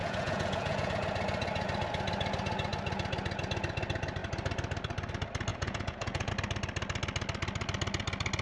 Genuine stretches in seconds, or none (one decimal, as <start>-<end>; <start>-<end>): 0.9-5.5; 6.3-8.4